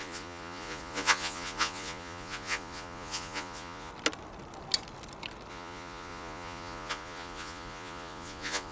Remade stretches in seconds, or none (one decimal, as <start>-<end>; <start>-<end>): 0.0-3.9; 5.5-8.7